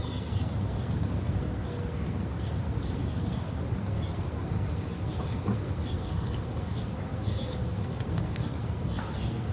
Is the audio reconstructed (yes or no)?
yes